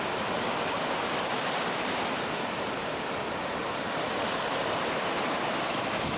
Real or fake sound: fake